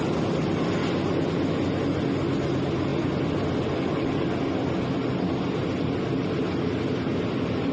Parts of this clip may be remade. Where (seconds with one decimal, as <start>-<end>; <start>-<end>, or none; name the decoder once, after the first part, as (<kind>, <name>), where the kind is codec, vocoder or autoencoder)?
none